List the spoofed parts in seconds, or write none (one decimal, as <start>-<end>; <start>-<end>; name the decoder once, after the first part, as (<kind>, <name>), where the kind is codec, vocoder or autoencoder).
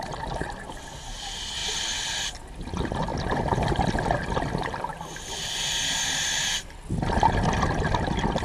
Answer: none